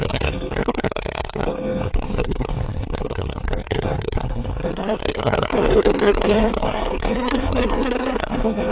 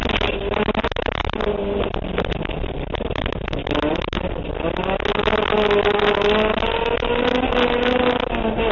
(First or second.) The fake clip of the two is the first